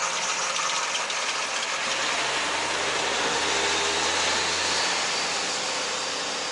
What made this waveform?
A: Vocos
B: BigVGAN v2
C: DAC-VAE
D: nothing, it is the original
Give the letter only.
D